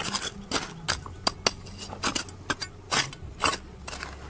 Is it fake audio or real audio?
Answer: real